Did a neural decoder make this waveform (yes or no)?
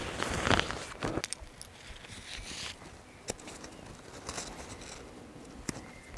no